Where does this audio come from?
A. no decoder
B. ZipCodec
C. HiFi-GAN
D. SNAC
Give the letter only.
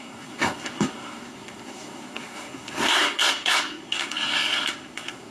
D